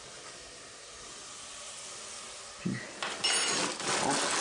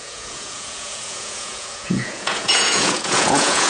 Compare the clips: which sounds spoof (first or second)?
second